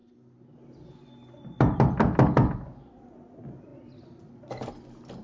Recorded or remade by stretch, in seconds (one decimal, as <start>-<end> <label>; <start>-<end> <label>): 0.0-5.2 recorded

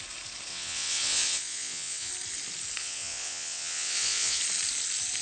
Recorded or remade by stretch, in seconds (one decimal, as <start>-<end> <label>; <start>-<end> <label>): 0.0-0.5 recorded; 0.5-2.1 remade; 2.1-2.8 recorded; 2.8-4.4 remade; 4.4-5.2 recorded

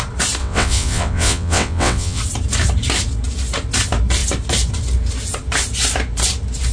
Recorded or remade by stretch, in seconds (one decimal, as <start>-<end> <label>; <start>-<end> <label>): 0.0-0.4 recorded; 0.4-2.2 remade; 2.2-6.7 recorded

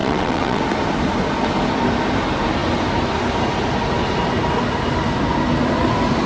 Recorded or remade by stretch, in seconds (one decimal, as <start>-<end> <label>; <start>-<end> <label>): 0.0-0.6 remade; 0.6-6.3 recorded

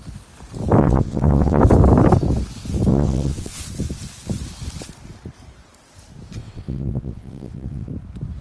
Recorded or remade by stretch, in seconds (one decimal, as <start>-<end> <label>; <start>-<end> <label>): 0.0-0.8 recorded; 0.8-1.6 remade; 1.6-2.9 recorded; 2.9-3.6 remade; 3.6-6.4 recorded; 6.4-7.9 remade; 7.9-8.4 recorded

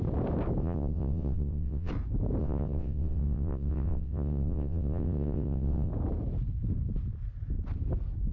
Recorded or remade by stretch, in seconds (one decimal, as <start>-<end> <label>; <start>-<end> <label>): 0.0-0.6 recorded; 0.6-1.9 remade; 1.9-2.4 recorded; 2.4-5.9 remade; 5.9-8.3 recorded